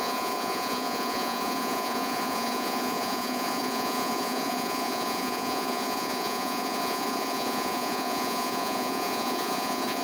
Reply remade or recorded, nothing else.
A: remade